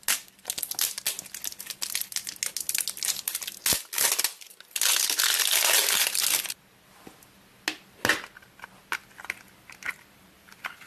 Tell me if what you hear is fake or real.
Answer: real